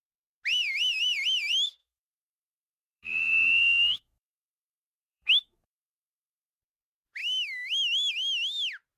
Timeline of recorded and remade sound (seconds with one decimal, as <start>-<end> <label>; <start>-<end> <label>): 0.0-1.8 recorded; 1.8-6.6 remade; 6.6-7.2 recorded; 7.2-8.1 remade; 8.1-9.0 recorded